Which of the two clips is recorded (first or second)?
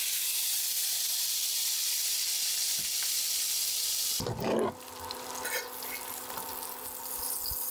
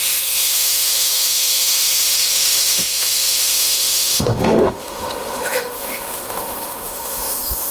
first